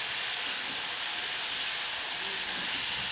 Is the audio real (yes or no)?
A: no